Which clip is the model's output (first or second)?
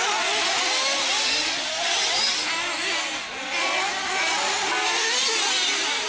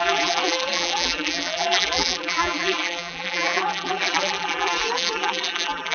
second